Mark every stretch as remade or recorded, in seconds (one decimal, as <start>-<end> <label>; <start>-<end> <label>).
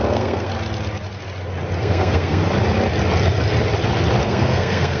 0.0-0.5 remade; 0.5-1.8 recorded; 1.8-2.4 remade; 2.4-4.2 recorded; 4.2-5.0 remade